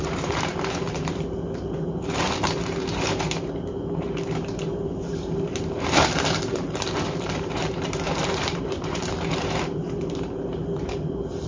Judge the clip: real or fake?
fake